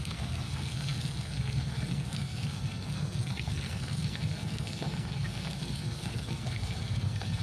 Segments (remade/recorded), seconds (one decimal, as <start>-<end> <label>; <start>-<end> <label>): 0.0-7.4 remade